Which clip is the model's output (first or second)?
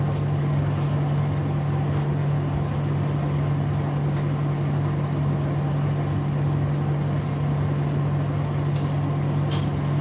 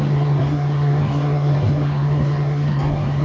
second